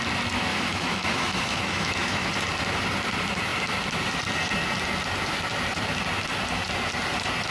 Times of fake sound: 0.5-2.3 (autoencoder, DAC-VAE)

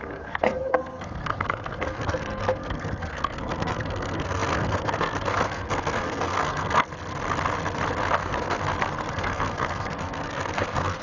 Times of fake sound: 0.0-6.9 (codec, SNAC); 8.2-8.6; 9.1-11.0

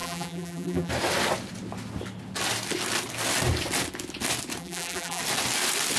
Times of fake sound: 0.0-0.9 (vocoder, BigVGAN v2); 4.6-5.2